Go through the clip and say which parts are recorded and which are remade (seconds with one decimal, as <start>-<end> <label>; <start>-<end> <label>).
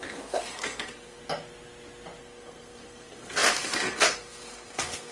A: 0.0-1.2 remade; 1.2-2.2 recorded; 2.2-5.1 remade